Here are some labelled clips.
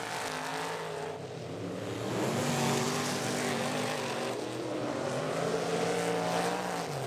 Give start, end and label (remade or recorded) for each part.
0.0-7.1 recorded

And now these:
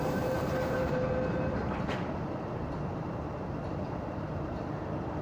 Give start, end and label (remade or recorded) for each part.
0.0-1.1 remade; 1.1-1.6 recorded; 1.6-4.6 remade; 4.6-5.2 recorded

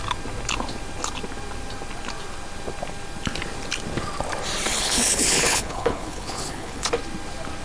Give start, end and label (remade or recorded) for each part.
0.0-4.7 recorded; 4.7-6.9 remade; 6.9-7.6 recorded

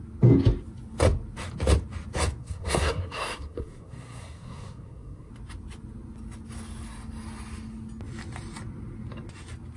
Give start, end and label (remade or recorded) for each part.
0.0-2.4 recorded; 2.4-5.3 remade; 5.3-9.8 recorded

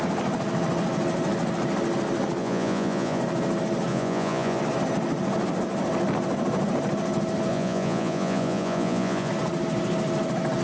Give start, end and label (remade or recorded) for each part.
0.0-2.4 recorded; 2.4-3.2 remade; 3.2-3.9 recorded; 3.9-4.6 remade; 4.6-7.5 recorded; 7.5-9.3 remade; 9.3-10.6 recorded

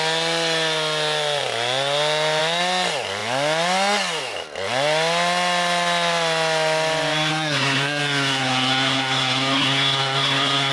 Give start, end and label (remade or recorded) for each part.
0.0-7.3 recorded; 7.3-10.7 remade

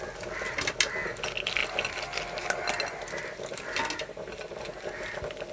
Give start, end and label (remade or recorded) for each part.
0.0-5.5 recorded

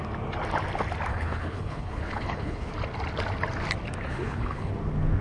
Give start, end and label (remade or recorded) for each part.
0.0-1.1 recorded; 1.1-2.7 remade; 2.7-4.1 recorded; 4.1-4.7 remade; 4.7-5.2 recorded